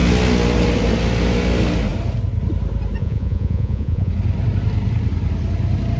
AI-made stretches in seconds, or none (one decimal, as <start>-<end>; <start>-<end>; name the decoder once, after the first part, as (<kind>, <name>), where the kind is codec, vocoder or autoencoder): 3.0-4.1 (vocoder, Vocos)